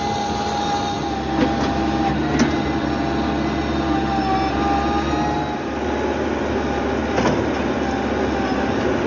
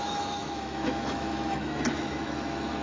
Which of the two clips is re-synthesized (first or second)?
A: second